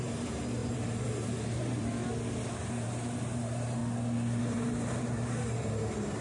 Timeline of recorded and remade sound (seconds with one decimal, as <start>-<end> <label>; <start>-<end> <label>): 0.0-2.0 remade; 2.0-2.7 recorded; 2.7-3.8 remade; 3.8-4.4 recorded; 4.4-6.2 remade